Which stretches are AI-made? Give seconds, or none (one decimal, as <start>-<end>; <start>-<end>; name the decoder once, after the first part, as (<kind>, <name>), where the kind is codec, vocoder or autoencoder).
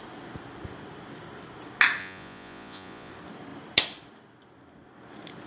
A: 2.0-3.1 (vocoder, Vocos)